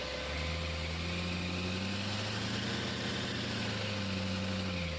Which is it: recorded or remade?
recorded